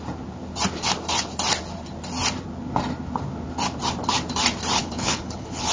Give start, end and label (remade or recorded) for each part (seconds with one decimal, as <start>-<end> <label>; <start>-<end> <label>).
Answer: 0.0-4.8 recorded; 4.8-5.7 remade